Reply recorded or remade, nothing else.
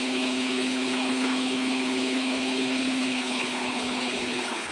remade